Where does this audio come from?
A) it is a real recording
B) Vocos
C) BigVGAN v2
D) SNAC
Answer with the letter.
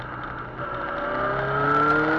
A